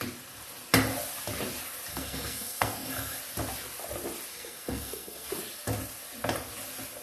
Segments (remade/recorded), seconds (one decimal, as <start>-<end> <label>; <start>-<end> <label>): 0.0-1.9 recorded; 1.9-3.2 remade; 3.2-4.3 recorded; 4.3-5.3 remade; 5.3-7.0 recorded

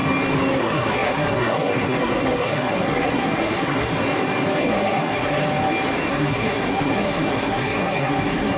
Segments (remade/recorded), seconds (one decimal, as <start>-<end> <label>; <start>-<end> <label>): 0.0-0.6 recorded; 0.6-3.9 remade; 3.9-4.6 recorded; 4.6-5.4 remade; 5.4-6.1 recorded; 6.1-8.6 remade